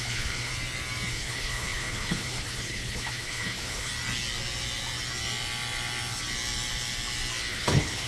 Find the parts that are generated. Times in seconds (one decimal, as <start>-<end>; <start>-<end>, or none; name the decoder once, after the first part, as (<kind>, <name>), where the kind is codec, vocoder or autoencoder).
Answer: 0.0-0.5 (codec, HILCodec); 1.1-3.9; 7.5-8.1